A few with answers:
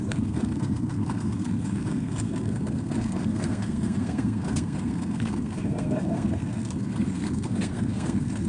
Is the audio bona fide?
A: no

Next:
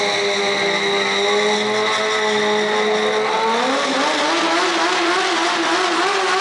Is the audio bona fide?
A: yes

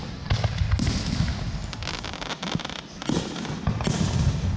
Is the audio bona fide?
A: yes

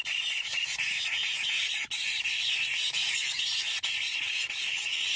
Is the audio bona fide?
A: yes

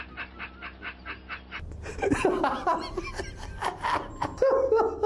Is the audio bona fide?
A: yes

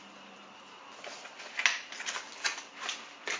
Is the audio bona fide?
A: yes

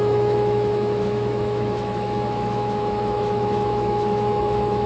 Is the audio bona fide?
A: no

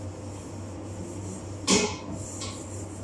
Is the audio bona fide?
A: yes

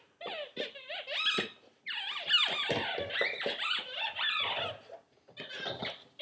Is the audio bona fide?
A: yes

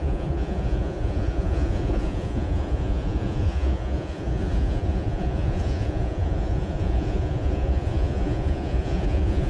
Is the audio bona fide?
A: no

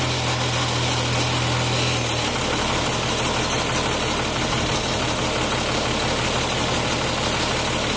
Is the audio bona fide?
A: yes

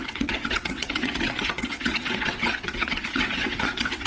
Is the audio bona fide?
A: no